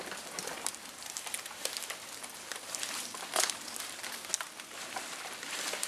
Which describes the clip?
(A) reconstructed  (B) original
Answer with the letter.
B